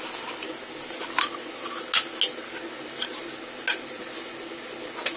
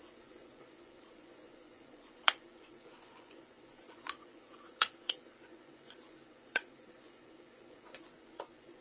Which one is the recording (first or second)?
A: first